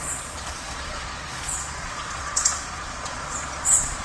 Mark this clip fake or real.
fake